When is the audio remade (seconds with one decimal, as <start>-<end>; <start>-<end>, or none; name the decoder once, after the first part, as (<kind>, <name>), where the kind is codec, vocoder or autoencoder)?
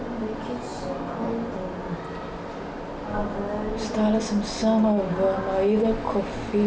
none